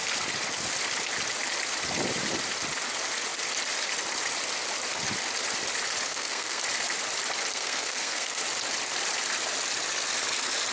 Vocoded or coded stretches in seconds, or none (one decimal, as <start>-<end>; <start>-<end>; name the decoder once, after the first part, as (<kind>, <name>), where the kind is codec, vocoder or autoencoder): 6.1-6.6 (codec, SNAC); 7.5-8.4

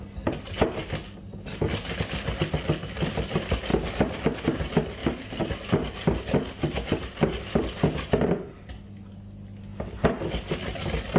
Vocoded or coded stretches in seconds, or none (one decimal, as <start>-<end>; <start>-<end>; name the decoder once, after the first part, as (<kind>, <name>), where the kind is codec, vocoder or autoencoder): none

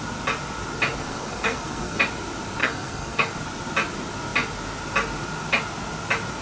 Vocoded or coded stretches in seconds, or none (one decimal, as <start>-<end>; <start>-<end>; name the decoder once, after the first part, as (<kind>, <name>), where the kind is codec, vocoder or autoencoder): 1.0-2.0 (codec, SNAC); 2.6-3.3